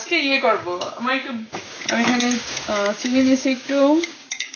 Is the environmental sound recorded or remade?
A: remade